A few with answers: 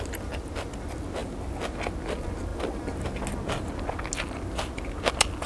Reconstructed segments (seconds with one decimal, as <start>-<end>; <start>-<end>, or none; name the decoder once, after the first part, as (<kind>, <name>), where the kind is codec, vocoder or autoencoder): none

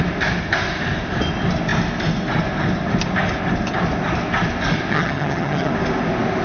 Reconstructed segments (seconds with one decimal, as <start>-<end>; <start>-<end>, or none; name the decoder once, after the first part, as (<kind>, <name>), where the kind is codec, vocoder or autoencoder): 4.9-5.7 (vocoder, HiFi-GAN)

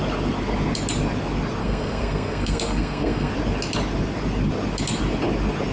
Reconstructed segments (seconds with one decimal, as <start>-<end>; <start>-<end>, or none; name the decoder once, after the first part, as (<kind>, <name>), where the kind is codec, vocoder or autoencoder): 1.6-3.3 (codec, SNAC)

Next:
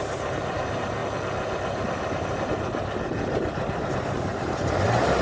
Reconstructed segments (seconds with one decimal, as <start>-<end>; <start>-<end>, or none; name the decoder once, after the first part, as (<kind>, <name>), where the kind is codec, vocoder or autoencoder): 0.0-1.0 (vocoder, BigVGAN v2); 4.1-5.2

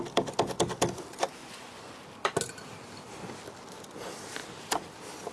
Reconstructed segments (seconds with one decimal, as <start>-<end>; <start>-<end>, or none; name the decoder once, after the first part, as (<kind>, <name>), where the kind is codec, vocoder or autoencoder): 1.4-1.9 (vocoder, Vocos)

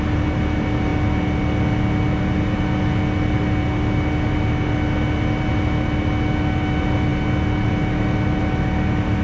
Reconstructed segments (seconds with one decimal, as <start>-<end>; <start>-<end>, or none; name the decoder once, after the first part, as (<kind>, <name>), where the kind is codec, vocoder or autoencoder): none

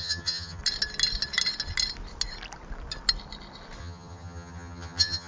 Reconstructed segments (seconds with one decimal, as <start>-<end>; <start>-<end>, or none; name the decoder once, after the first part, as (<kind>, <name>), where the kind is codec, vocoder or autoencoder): 0.0-0.6 (vocoder, HiFi-GAN); 3.8-5.3

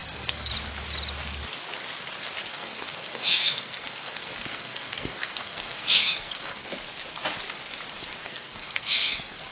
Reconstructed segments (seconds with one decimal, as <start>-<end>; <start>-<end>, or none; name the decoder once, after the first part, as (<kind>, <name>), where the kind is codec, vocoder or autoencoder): 0.0-0.5 (codec, SNAC); 2.5-6.7; 8.2-9.5